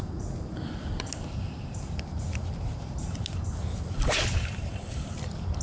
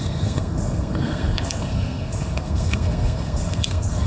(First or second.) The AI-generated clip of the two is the second